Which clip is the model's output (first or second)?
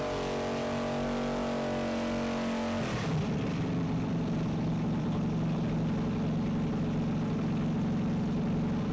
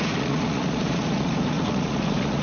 second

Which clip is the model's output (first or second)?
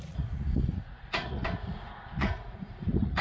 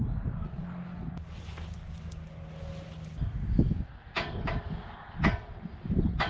first